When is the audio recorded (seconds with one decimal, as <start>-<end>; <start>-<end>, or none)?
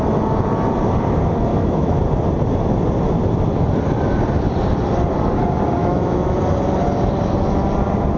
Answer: 0.0-1.5; 2.0-5.8; 6.4-8.2